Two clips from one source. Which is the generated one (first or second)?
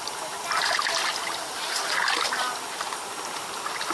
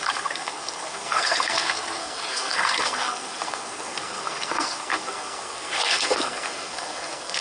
second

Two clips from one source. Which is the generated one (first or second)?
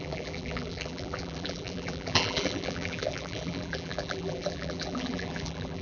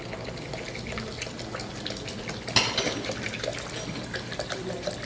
first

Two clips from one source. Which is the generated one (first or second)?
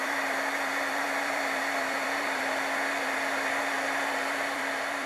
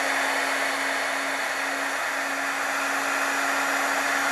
first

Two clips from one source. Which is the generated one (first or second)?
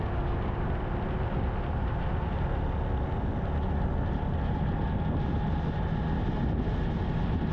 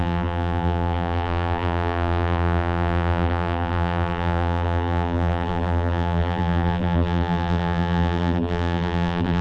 second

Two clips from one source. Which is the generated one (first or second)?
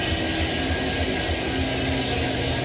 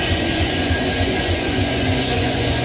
second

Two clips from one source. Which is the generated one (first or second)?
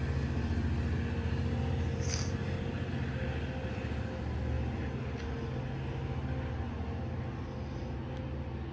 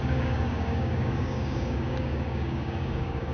second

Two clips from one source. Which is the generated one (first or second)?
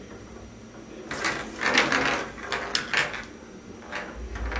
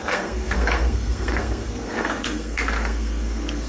second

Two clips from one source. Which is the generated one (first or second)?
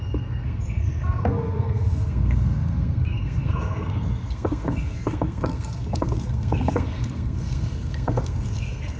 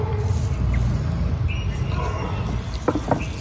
first